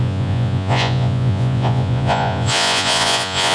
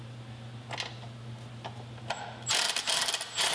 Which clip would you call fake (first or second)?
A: first